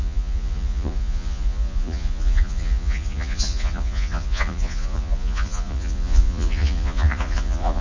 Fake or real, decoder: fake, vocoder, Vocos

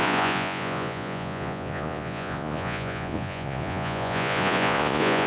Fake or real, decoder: fake, vocoder, Vocos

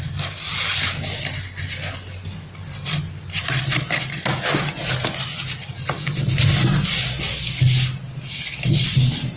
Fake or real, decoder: real